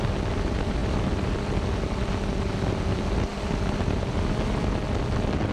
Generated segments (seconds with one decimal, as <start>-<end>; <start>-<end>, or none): none